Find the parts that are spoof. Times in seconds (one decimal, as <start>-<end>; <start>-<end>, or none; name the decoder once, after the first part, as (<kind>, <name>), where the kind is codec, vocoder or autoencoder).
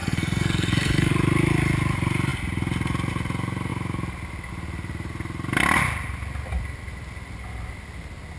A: 0.0-1.1 (codec, SNAC)